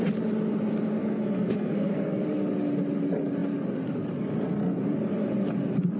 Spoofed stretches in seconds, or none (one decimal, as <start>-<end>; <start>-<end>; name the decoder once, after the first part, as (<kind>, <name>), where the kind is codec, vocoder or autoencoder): 1.0-2.2 (codec, SNAC)